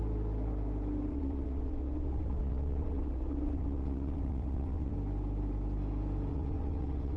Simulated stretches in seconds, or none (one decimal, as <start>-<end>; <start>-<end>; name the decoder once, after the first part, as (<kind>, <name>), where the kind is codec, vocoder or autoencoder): 1.1-4.9 (vocoder, WaveNeXt); 6.3-7.2